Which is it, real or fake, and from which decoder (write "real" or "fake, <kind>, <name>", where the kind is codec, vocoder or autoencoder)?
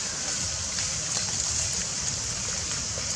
real